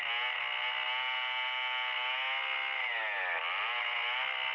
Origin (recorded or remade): recorded